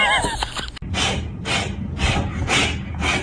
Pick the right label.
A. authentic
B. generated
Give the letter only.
A